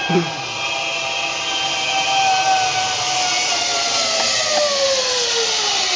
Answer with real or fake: real